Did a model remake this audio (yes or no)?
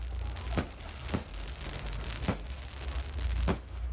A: no